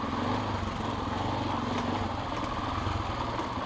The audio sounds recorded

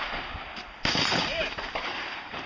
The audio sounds recorded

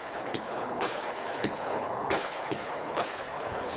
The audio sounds remade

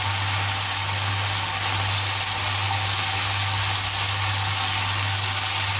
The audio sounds recorded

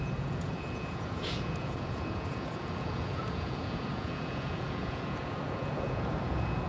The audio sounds remade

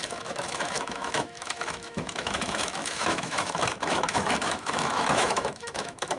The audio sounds remade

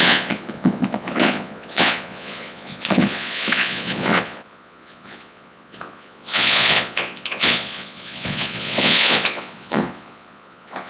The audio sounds remade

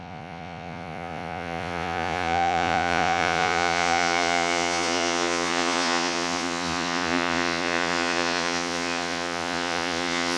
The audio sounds remade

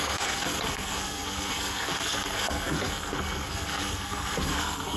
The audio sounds remade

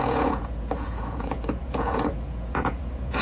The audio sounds remade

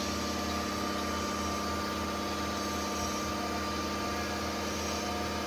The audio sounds recorded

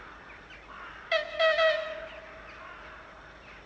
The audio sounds recorded